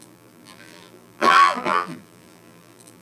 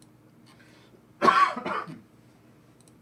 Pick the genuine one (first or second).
second